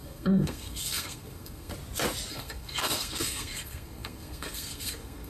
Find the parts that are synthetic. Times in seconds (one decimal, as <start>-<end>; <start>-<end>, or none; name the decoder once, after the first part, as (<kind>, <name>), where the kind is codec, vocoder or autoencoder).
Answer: 0.0-1.7 (codec, SNAC); 2.3-5.3